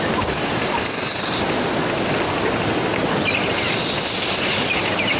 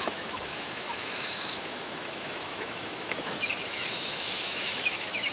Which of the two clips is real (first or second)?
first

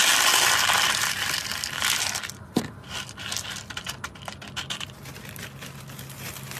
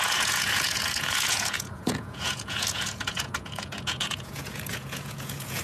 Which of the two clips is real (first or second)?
first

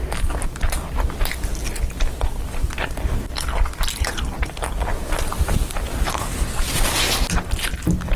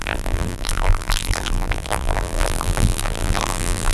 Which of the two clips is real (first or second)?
first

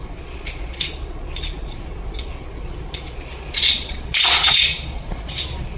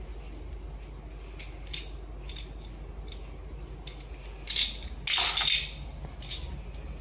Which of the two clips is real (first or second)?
second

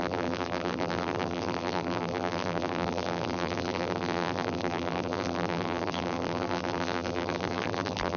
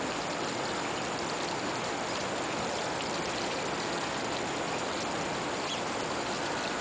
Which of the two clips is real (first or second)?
second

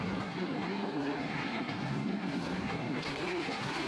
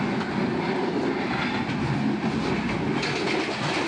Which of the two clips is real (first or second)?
second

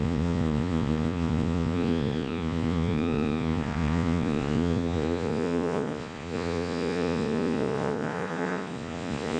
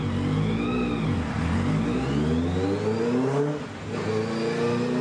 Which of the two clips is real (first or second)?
second